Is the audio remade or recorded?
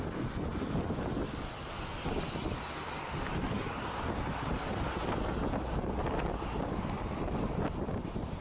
recorded